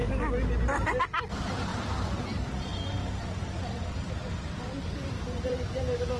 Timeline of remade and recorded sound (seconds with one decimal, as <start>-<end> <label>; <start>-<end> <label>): 0.0-4.2 recorded; 4.2-5.8 remade; 5.8-6.2 recorded